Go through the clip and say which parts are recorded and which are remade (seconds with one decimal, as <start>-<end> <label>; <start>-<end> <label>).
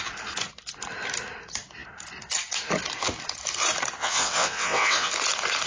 0.0-4.0 recorded; 4.0-5.1 remade; 5.1-5.7 recorded